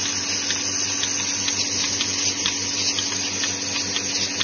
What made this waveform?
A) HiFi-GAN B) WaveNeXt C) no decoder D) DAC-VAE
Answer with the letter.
C